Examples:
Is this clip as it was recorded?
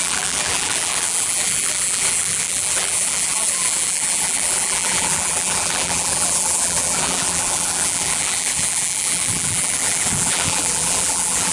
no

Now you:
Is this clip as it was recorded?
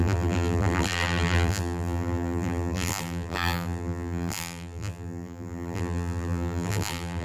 no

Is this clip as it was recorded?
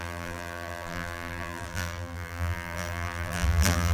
no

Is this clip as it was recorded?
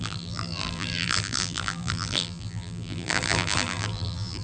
no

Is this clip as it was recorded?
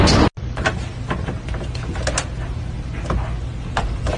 yes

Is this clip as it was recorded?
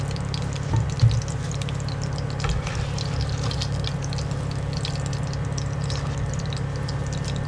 yes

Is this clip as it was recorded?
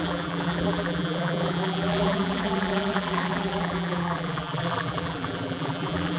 no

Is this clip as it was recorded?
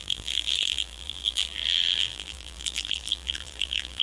no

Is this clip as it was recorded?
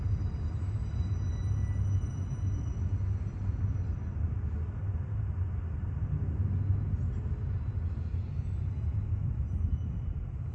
yes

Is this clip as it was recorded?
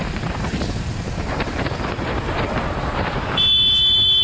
no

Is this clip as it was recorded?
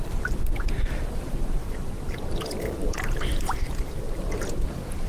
no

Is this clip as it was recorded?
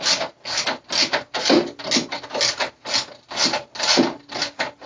yes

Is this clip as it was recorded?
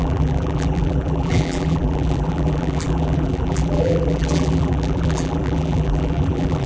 no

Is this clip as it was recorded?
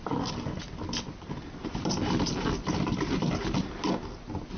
yes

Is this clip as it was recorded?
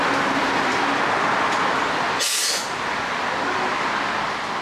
yes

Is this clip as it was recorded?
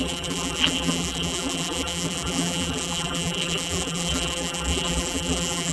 no